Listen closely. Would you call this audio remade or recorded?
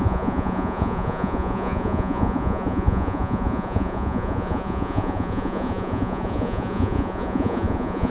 remade